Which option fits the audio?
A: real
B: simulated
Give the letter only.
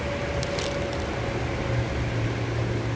A